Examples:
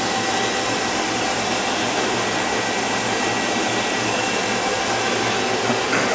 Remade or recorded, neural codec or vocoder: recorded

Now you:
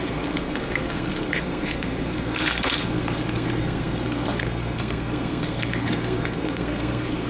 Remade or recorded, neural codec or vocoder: remade, codec, SNAC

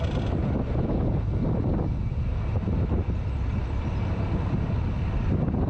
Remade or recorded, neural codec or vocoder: recorded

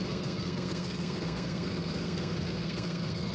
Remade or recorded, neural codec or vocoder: remade, codec, SNAC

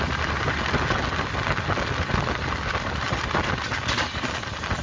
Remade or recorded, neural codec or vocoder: recorded